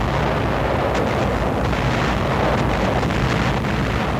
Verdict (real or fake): real